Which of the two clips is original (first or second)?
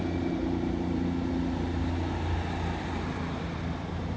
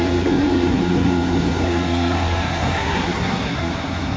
first